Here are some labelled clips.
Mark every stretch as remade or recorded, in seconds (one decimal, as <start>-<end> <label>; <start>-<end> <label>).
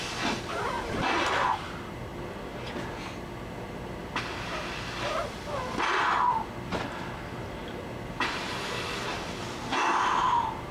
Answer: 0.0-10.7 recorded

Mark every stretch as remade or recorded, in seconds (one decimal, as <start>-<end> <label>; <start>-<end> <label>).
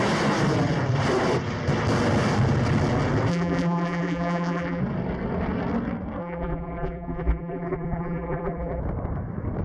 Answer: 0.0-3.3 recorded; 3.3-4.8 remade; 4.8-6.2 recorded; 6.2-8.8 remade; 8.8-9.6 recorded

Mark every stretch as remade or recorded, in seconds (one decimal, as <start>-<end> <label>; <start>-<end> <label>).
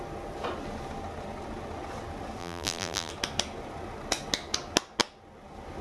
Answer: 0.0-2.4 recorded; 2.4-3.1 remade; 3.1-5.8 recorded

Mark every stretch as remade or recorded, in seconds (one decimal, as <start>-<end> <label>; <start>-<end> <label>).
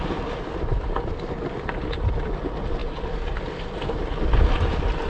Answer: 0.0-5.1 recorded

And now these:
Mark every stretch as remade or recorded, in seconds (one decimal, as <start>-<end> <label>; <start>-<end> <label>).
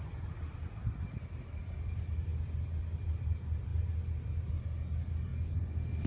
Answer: 0.0-6.1 recorded